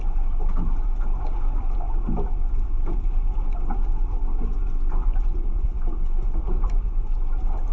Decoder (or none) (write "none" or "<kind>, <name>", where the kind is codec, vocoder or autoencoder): vocoder, BigVGAN v2